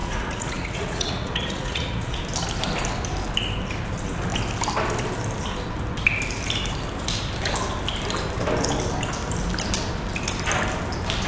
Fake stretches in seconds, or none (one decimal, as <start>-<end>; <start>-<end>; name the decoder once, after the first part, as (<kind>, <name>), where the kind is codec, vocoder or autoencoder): 0.0-2.2 (vocoder, Vocos)